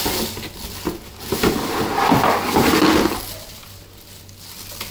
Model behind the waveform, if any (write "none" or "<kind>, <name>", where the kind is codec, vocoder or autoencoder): none